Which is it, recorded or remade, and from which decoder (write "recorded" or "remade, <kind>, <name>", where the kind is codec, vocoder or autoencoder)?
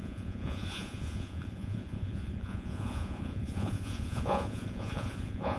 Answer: remade, vocoder, Vocos